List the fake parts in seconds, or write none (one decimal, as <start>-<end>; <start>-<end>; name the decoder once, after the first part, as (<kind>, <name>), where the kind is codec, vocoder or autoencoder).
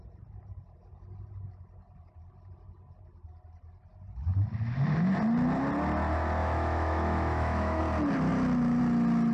6.4-7.8 (autoencoder, DAC-VAE)